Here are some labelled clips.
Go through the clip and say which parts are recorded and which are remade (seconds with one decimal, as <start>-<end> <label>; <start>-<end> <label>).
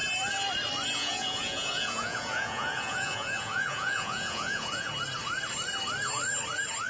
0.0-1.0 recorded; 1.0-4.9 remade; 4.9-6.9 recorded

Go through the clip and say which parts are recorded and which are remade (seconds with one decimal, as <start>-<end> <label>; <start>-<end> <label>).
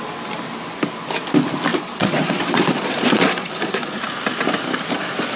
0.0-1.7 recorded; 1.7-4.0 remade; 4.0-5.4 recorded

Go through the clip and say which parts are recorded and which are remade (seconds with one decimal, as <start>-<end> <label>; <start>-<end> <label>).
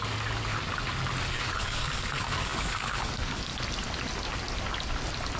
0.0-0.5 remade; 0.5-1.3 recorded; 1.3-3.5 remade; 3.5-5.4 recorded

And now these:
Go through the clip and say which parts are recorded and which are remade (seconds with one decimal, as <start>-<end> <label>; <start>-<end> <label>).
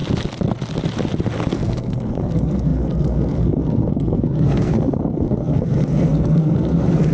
0.0-1.5 recorded; 1.5-7.1 remade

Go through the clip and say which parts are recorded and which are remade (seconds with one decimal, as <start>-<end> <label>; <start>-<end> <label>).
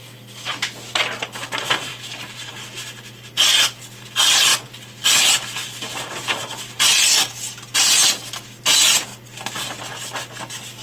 0.0-10.8 recorded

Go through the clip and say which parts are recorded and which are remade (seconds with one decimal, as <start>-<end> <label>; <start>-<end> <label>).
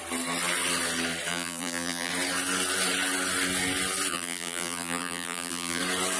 0.0-1.3 recorded; 1.3-2.1 remade; 2.1-4.1 recorded; 4.1-5.8 remade; 5.8-6.2 recorded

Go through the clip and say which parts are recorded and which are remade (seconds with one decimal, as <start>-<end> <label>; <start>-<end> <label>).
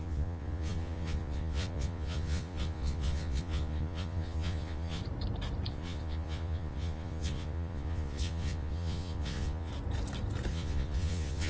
0.0-5.0 remade; 5.0-5.7 recorded; 5.7-9.7 remade; 9.7-10.5 recorded; 10.5-11.5 remade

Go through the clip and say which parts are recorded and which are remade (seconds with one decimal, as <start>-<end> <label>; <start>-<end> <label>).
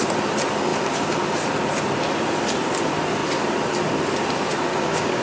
0.0-4.7 recorded; 4.7-5.2 remade